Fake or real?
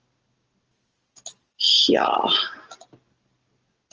real